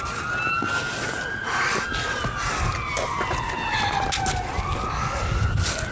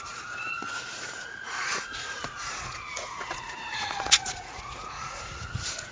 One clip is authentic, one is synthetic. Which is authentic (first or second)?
first